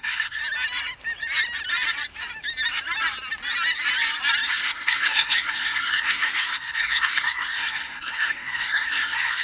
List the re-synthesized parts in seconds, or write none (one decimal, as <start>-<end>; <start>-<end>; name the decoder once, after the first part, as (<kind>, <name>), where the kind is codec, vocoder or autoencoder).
0.0-0.4 (codec, SNAC); 4.5-9.4